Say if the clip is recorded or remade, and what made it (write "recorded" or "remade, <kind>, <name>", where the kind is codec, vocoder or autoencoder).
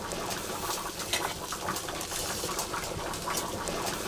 recorded